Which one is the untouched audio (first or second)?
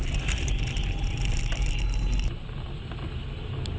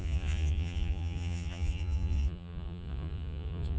first